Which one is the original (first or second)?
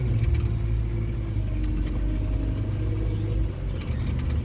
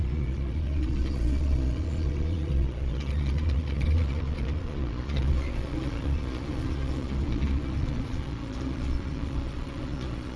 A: first